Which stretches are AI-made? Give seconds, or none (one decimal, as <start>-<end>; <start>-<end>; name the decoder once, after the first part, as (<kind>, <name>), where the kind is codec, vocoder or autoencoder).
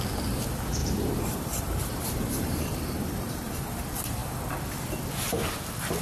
0.8-3.8 (vocoder, BigVGAN v2)